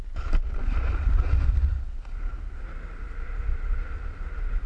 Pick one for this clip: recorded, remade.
recorded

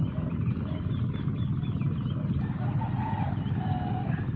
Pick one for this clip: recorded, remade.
recorded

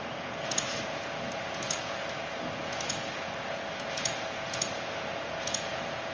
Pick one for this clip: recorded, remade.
remade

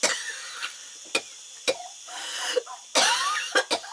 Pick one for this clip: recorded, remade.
recorded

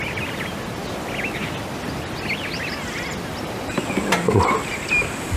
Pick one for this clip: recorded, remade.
recorded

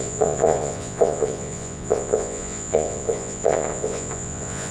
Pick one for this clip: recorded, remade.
remade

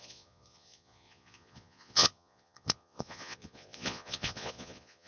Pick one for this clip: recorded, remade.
remade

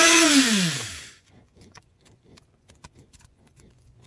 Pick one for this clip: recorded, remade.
remade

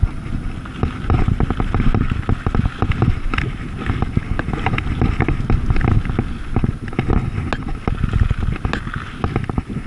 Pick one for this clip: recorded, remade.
recorded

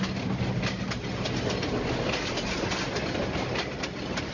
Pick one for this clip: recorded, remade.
recorded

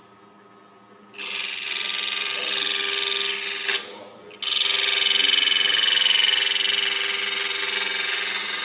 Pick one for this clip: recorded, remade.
recorded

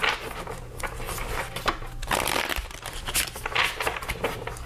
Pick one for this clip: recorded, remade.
recorded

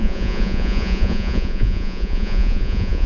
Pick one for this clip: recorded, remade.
remade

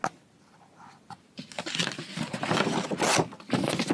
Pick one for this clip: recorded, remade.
recorded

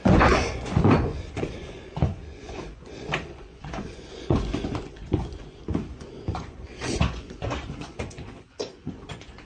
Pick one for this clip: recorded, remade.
remade